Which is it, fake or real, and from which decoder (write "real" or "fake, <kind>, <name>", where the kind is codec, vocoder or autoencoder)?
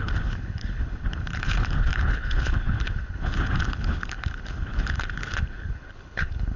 fake, codec, HILCodec